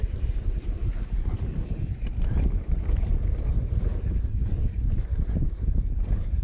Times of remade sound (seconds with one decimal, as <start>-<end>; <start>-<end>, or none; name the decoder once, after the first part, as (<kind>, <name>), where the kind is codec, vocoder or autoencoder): 0.0-1.5 (vocoder, BigVGAN v2); 3.5-6.4

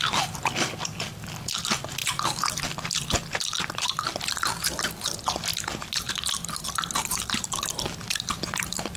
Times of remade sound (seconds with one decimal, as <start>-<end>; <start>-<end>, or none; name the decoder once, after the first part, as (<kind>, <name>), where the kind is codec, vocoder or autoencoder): none

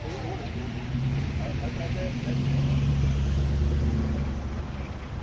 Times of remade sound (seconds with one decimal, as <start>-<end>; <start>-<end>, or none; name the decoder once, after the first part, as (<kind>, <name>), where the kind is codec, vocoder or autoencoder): none

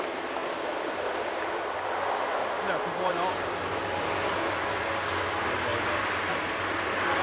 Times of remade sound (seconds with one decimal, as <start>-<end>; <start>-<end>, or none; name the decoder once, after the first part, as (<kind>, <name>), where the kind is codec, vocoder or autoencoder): 0.4-3.1 (vocoder, BigVGAN v2); 5.7-6.3

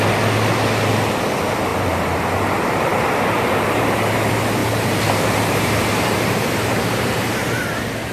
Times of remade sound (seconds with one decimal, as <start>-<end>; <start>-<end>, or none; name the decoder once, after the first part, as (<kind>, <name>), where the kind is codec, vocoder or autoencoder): 1.7-2.3 (vocoder, BigVGAN v2); 4.6-7.6

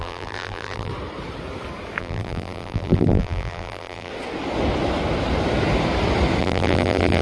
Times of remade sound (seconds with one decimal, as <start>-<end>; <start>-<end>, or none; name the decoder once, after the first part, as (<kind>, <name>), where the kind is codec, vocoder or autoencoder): 0.0-0.9 (vocoder, BigVGAN v2); 2.0-4.1; 6.4-7.2